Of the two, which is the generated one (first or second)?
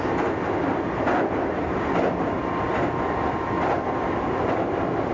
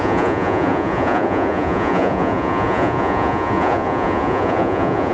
second